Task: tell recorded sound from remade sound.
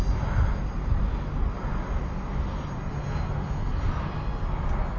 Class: recorded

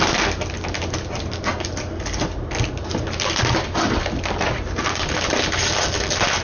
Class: recorded